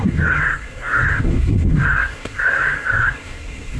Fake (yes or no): yes